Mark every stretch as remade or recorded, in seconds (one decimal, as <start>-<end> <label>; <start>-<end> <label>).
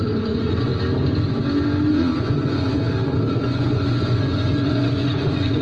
0.0-0.7 remade; 0.7-1.9 recorded; 1.9-2.7 remade; 2.7-3.3 recorded; 3.3-5.6 remade